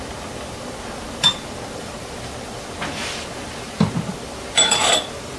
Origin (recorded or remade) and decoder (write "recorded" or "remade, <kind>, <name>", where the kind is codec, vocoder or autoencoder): remade, vocoder, BigVGAN v2